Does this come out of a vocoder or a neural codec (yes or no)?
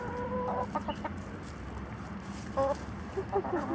no